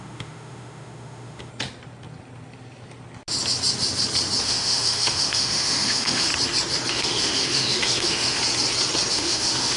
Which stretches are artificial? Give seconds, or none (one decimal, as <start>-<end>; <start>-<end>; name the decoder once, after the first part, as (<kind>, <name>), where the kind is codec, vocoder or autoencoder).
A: 0.0-1.5 (autoencoder, DAC-VAE); 4.4-6.3; 6.9-8.4; 9.1-9.8